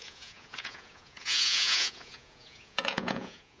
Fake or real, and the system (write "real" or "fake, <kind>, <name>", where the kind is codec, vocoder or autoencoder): fake, vocoder, Vocos